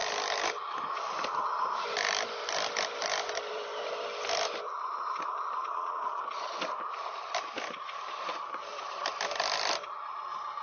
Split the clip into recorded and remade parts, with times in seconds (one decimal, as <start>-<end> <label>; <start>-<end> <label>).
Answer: 0.0-5.6 recorded; 5.6-6.2 remade; 6.2-10.6 recorded